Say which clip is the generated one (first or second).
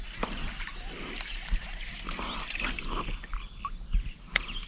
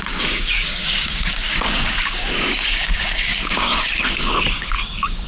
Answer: second